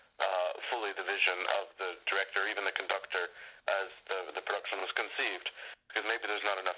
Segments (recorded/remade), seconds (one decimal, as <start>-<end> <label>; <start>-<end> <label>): 0.0-6.8 recorded